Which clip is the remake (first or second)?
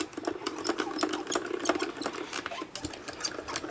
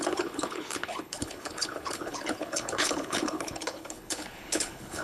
second